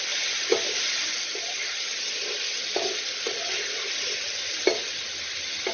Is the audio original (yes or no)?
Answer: yes